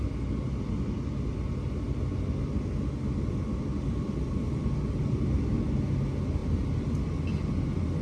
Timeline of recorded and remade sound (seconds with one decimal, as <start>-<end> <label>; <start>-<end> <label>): 0.0-8.0 recorded